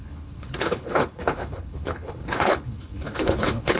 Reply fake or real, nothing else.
fake